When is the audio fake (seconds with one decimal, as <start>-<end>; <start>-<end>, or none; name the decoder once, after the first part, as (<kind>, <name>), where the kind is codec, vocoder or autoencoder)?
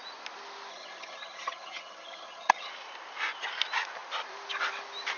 0.7-2.7 (vocoder, HiFi-GAN)